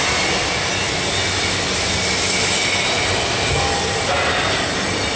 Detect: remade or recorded recorded